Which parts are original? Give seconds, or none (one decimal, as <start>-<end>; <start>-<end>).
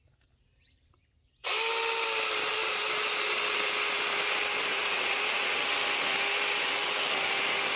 0.0-4.7; 5.6-7.8